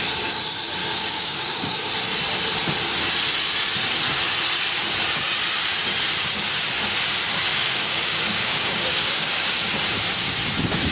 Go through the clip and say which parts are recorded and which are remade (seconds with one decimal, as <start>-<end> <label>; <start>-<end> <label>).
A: 0.0-0.8 recorded; 0.8-1.9 remade; 1.9-7.5 recorded; 7.5-9.7 remade; 9.7-10.9 recorded